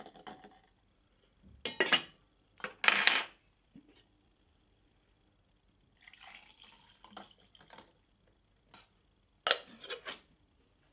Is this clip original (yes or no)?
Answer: yes